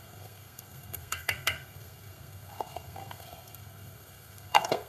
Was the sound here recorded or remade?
remade